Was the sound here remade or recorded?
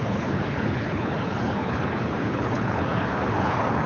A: remade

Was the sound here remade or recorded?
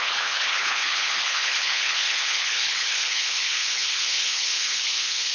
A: remade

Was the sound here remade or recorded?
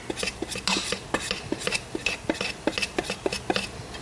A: recorded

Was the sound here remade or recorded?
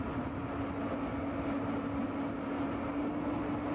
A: recorded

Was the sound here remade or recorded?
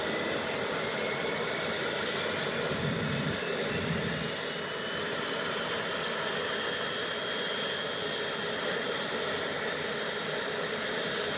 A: recorded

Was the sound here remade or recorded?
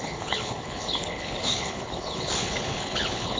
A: remade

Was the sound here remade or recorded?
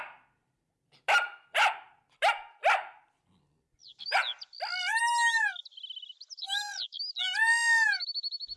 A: recorded